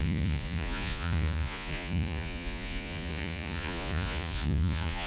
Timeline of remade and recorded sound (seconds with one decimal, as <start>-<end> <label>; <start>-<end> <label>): 0.0-5.1 remade